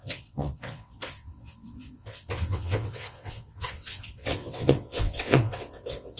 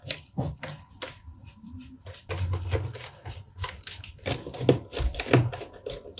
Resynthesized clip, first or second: first